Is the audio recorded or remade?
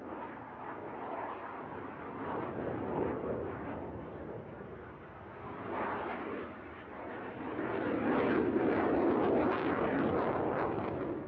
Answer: recorded